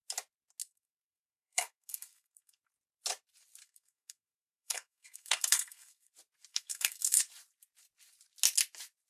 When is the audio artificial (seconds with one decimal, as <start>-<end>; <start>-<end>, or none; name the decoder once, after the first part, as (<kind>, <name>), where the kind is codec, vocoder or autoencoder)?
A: 0.6-2.6 (codec, SNAC); 3.6-6.1; 6.5-7.2

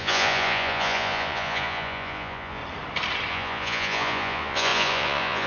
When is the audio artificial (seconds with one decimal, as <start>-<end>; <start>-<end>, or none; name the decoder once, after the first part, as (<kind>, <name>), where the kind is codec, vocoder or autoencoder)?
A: 0.0-2.6 (vocoder, Vocos); 3.3-5.5

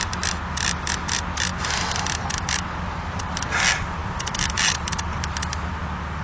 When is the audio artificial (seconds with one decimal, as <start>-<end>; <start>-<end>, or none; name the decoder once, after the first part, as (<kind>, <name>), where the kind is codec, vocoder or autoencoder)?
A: 4.0-4.9 (vocoder, BigVGAN v2)

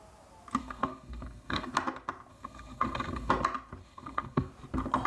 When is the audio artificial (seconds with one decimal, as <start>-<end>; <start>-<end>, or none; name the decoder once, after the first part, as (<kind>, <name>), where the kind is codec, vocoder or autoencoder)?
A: 0.6-1.7 (codec, SNAC); 2.3-3.3; 3.8-4.5

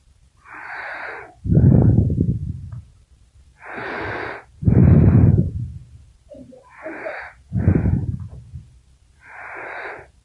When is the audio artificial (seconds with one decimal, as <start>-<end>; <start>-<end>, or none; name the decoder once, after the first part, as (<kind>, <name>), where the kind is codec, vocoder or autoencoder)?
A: 0.0-4.8 (vocoder, BigVGAN v2); 5.3-10.2

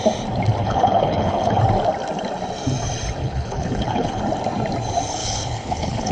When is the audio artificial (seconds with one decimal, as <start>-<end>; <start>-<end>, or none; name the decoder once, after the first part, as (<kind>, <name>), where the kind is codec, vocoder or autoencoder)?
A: 0.6-1.6 (codec, HILCodec); 3.2-4.2; 5.2-6.1

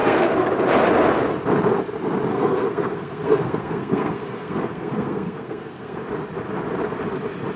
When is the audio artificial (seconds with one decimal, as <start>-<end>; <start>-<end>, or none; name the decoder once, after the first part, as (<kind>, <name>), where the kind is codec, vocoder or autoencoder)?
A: 0.0-0.5 (codec, SNAC); 2.3-6.0